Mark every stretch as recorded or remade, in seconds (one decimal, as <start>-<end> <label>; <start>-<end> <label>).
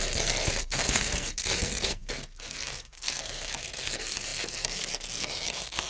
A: 0.0-5.9 remade